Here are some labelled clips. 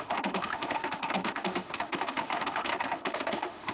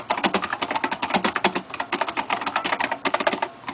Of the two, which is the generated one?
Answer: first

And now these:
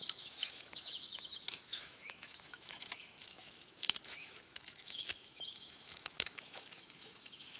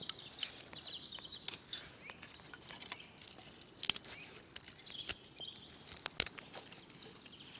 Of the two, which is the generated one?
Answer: first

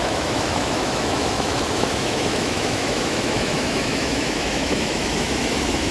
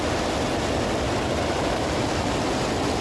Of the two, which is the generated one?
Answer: first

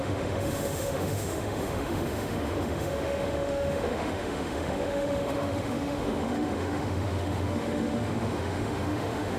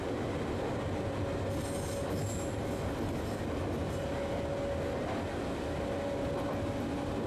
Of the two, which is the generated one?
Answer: first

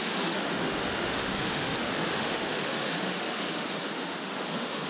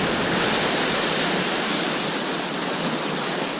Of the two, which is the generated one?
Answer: first